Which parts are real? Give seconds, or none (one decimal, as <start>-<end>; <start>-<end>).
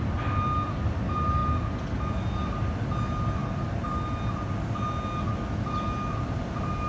0.0-6.9